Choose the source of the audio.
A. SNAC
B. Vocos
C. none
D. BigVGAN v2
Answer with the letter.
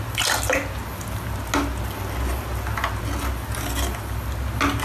C